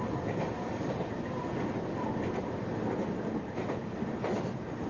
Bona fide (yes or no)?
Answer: yes